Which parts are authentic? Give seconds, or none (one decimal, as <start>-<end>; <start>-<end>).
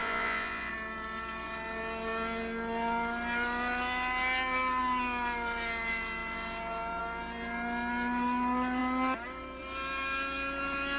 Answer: 0.7-11.0